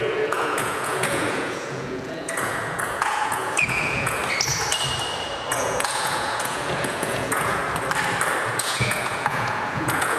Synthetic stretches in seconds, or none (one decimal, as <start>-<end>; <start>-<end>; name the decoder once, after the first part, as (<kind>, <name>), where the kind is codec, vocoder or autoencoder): 0.0-4.2 (vocoder, Vocos); 5.5-7.6; 8.4-10.2

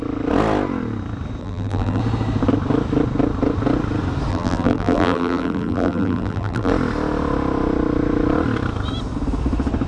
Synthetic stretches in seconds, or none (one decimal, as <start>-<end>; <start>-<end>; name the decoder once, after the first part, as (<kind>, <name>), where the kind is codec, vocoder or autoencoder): 1.4-2.0 (vocoder, BigVGAN v2); 4.3-6.7

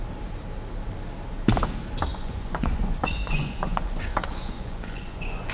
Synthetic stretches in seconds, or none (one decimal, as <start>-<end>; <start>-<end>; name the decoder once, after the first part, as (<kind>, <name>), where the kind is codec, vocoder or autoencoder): 2.1-5.5 (vocoder, Vocos)

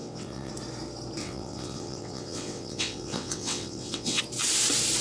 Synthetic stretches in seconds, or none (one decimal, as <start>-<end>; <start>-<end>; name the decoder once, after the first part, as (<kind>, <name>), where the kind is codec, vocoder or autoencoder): 0.0-0.5 (vocoder, WaveNeXt); 1.2-4.2

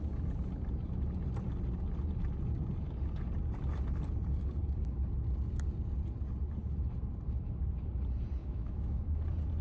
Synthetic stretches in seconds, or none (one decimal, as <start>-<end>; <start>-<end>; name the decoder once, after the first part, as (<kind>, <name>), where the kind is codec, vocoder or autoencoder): 8.4-9.2 (autoencoder, DAC-VAE)